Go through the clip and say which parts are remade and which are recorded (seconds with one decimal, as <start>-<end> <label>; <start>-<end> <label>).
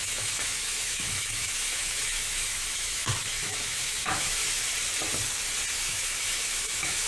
0.0-4.4 remade; 4.4-5.7 recorded; 5.7-7.1 remade